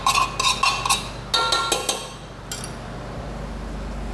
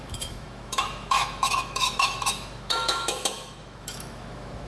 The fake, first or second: second